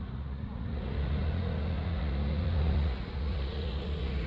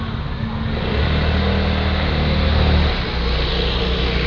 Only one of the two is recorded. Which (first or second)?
second